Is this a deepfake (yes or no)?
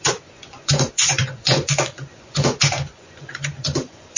yes